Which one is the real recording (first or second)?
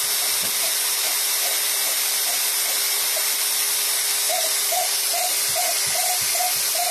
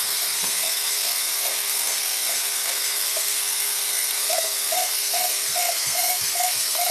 first